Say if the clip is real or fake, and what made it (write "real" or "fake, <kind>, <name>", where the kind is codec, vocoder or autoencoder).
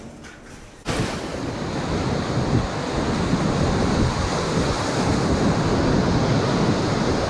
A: real